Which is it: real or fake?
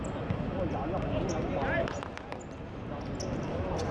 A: real